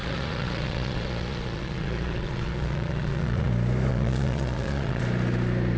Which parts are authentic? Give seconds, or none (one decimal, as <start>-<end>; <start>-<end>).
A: 3.5-3.9; 5.0-5.8

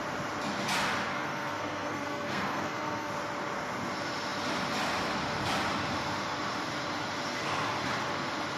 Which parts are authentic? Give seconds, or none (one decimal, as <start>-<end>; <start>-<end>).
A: 0.0-1.1; 3.1-8.6

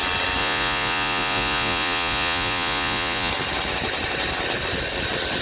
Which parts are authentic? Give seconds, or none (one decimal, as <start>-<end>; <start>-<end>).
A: 0.0-0.4; 3.3-5.4